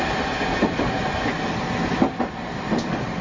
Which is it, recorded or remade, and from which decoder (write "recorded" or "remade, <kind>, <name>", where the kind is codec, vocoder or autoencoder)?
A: recorded